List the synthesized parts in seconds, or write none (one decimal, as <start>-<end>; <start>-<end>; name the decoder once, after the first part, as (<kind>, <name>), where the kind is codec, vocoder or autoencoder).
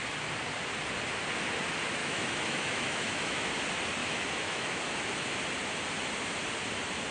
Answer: 2.0-3.5 (autoencoder, DAC-VAE); 4.0-4.8